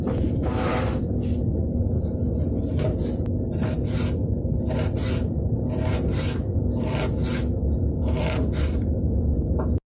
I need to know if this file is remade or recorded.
recorded